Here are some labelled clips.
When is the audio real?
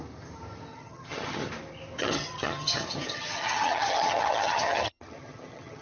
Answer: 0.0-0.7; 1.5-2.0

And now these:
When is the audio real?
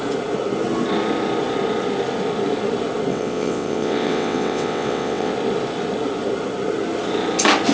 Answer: 0.0-3.1; 5.3-7.7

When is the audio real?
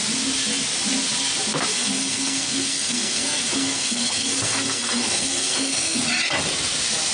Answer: 0.0-1.7; 6.0-7.1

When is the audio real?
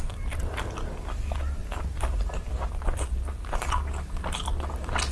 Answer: 0.0-5.1